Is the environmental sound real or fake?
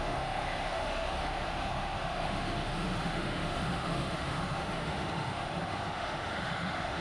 fake